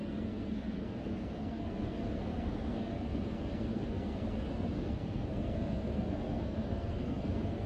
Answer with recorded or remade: remade